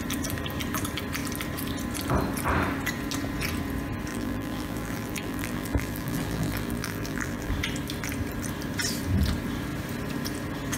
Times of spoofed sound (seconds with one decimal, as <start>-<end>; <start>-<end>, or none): 4.1-7.5